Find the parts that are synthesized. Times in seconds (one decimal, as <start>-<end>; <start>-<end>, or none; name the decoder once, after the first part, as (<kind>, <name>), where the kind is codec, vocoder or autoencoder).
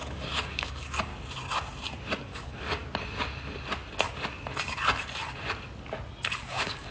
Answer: 0.0-1.1 (codec, DAC); 2.2-2.8; 6.4-6.9